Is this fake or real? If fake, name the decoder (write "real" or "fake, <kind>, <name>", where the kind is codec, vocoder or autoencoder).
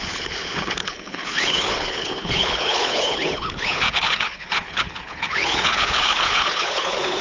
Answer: fake, codec, HILCodec